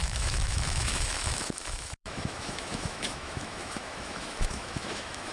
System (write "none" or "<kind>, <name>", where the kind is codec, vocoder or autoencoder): autoencoder, DAC-VAE